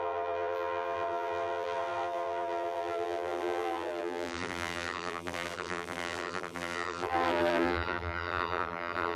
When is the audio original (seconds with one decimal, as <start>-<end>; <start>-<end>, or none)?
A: none